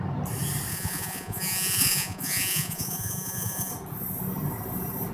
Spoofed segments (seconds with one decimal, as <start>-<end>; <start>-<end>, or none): 0.7-3.7